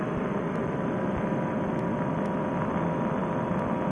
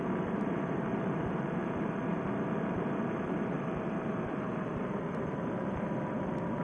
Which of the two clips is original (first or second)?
first